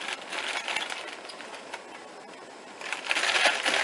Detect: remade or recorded recorded